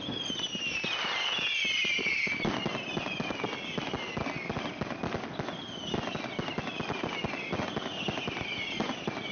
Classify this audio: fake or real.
real